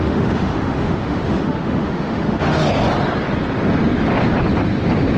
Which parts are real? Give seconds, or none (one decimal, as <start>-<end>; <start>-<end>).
2.7-5.2